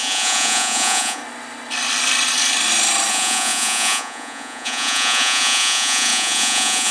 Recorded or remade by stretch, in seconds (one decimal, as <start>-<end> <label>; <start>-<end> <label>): 0.0-1.2 remade; 1.2-3.1 recorded; 3.1-6.9 remade